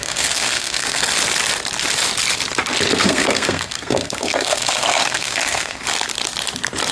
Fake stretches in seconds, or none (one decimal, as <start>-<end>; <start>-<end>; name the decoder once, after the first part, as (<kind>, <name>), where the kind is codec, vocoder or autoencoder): 0.0-1.0 (codec, SNAC); 2.9-5.8